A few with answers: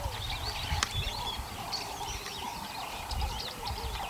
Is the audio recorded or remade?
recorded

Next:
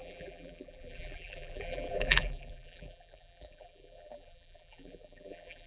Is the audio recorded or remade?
remade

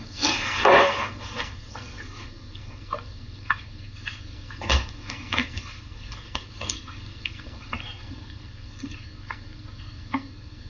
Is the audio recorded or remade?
remade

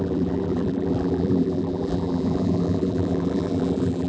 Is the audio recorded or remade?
remade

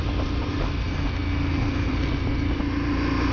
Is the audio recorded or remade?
recorded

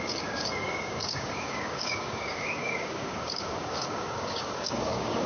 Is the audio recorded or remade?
remade